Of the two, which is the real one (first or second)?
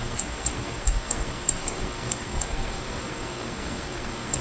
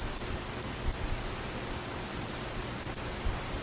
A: second